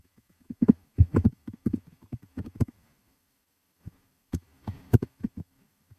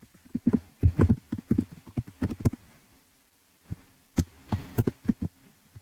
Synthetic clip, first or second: first